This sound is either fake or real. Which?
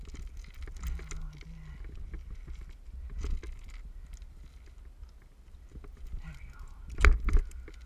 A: real